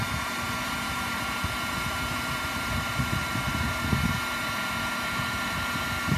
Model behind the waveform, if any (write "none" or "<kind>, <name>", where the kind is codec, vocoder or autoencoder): vocoder, BigVGAN v2